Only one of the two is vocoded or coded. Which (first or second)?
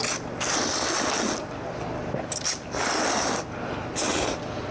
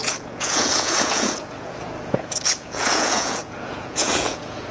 second